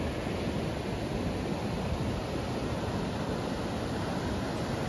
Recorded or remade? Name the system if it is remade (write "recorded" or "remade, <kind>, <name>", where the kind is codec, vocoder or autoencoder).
recorded